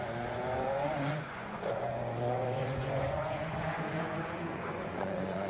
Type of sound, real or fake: fake